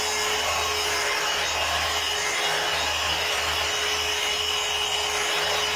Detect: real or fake real